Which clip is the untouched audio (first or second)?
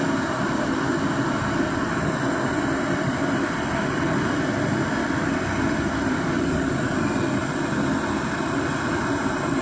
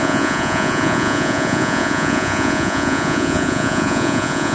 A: first